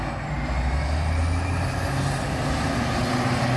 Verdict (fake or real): real